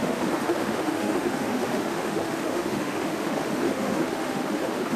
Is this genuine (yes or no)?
no